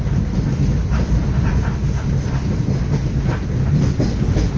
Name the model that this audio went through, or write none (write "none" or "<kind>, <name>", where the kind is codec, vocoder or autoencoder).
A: none